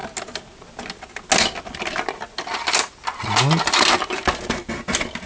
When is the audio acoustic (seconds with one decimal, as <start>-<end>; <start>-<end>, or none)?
0.0-5.3